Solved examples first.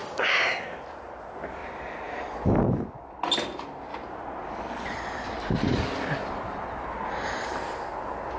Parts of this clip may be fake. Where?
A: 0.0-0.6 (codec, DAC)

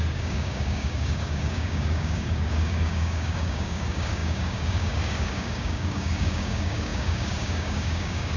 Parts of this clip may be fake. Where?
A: 0.0-8.4 (codec, DAC)

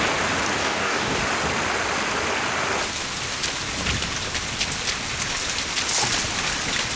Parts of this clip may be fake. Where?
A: 0.6-1.2 (codec, DAC)